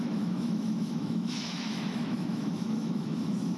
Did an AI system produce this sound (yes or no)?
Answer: yes